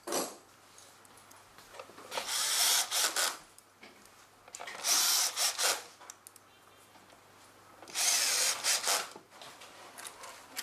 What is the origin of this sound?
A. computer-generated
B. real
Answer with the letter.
B